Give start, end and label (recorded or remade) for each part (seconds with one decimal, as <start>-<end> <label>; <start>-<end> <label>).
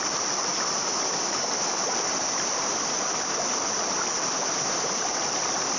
0.0-0.5 recorded; 0.5-2.1 remade; 2.1-5.8 recorded